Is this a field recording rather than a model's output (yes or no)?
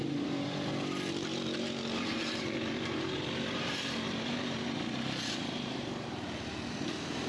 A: no